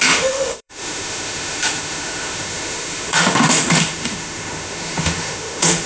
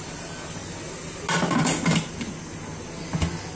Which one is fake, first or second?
first